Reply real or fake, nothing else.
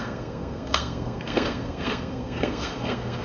fake